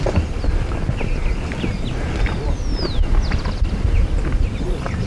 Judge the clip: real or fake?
real